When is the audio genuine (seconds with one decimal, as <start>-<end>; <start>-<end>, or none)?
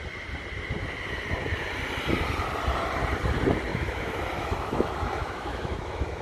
0.0-3.7